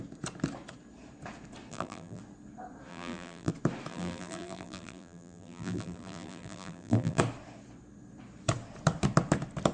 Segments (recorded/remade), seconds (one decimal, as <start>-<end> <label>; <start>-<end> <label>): 0.0-1.7 recorded; 1.7-2.2 remade; 2.2-2.9 recorded; 2.9-3.5 remade; 3.5-3.9 recorded; 3.9-7.2 remade; 7.2-9.7 recorded